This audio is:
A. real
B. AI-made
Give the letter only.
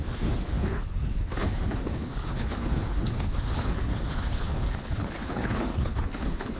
B